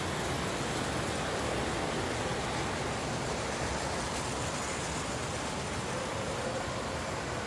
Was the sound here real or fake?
real